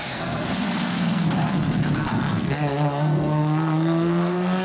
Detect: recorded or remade remade